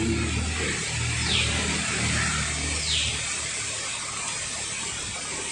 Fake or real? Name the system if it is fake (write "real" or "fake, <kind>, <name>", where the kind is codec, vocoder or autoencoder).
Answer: real